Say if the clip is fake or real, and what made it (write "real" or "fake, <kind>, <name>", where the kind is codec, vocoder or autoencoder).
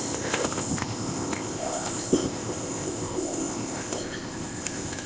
fake, codec, ZipCodec